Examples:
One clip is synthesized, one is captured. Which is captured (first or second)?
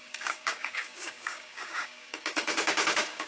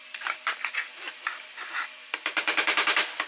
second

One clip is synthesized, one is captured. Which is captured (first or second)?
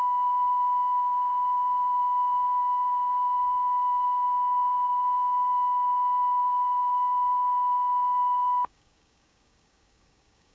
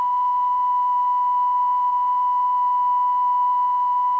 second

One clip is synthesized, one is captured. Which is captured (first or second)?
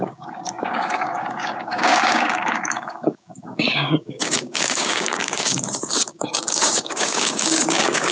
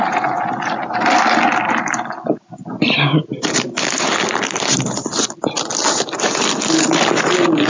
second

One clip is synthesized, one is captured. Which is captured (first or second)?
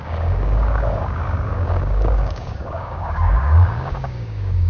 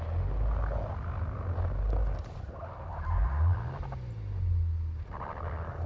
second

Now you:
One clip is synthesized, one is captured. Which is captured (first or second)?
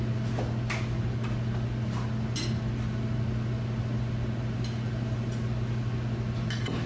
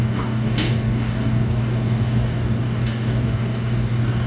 first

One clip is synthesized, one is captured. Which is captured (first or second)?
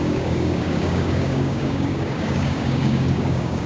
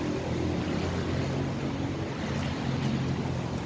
second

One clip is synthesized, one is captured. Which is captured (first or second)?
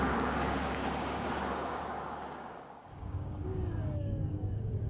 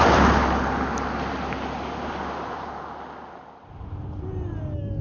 second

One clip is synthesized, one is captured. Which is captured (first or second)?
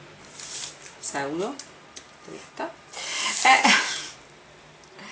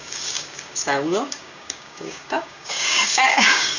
first